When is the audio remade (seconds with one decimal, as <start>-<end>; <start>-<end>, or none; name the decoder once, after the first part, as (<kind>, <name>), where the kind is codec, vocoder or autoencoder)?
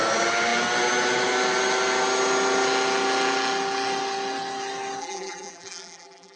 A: 5.0-6.4 (vocoder, BigVGAN v2)